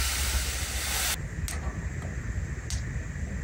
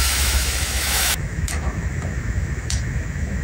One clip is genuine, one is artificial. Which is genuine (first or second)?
first